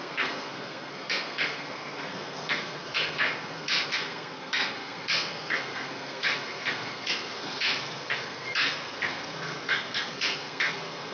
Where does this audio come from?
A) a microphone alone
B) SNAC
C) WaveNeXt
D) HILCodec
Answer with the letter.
B